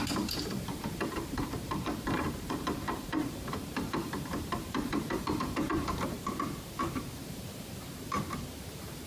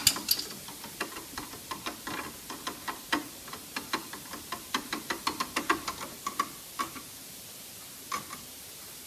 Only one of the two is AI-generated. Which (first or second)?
first